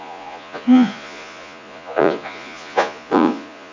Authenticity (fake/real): fake